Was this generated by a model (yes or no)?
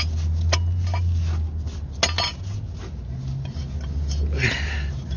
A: no